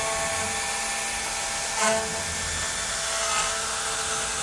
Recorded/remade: recorded